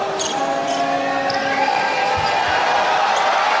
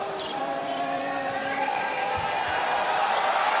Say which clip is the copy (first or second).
second